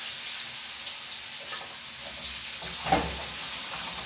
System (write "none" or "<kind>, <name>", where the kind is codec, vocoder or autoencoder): none